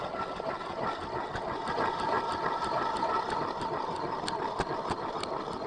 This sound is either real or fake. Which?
real